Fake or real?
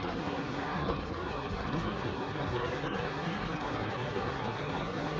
fake